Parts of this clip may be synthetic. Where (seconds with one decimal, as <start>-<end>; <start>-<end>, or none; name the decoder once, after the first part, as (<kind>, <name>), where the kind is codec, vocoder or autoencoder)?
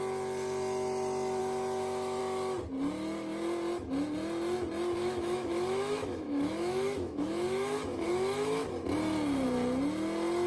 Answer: 1.4-2.2 (autoencoder, DAC-VAE); 5.0-8.7